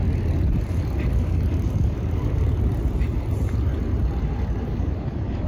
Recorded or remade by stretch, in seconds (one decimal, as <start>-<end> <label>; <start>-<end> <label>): 0.0-1.1 recorded; 1.1-2.6 remade; 2.6-4.6 recorded; 4.6-5.5 remade